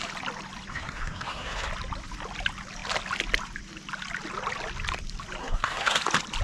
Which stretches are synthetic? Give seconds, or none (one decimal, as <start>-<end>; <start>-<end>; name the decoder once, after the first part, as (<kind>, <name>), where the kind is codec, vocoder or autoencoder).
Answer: 0.7-1.7 (codec, SNAC); 5.4-6.0